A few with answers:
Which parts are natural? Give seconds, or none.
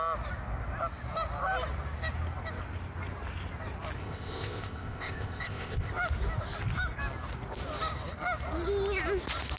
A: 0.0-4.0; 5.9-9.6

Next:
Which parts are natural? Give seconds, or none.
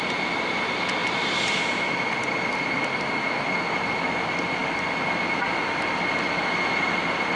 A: 0.0-1.0; 1.6-7.4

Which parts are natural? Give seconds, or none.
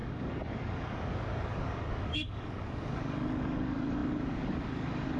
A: none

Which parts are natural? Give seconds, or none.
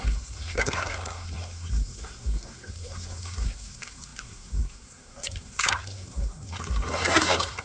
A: none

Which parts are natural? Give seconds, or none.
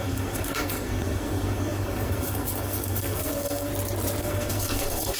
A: 3.7-4.2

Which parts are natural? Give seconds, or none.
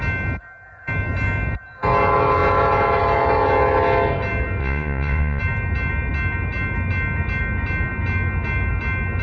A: 0.0-4.6; 5.4-9.2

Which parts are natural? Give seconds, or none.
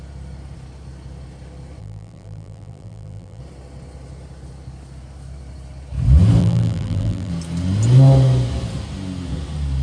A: 0.0-1.8; 3.4-6.4; 7.3-9.8